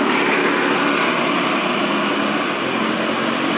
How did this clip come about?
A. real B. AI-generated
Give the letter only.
A